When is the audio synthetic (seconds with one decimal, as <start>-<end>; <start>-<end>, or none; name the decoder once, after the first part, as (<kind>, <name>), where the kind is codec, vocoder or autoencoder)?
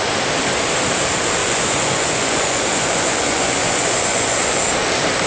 1.4-4.6 (vocoder, Vocos)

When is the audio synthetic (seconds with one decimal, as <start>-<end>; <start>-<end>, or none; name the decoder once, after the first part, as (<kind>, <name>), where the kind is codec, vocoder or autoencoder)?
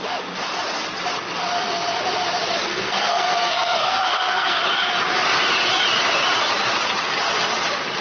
2.7-4.6 (codec, SNAC)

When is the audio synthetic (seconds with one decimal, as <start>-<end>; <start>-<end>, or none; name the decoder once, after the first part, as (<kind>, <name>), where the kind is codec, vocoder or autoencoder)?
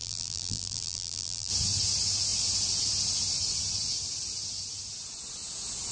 0.0-1.5 (vocoder, BigVGAN v2)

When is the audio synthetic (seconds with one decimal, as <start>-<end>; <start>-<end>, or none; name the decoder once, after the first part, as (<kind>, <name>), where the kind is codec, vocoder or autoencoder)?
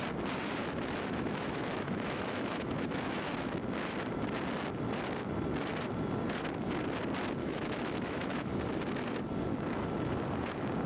0.6-3.3 (autoencoder, DAC-VAE); 7.4-8.5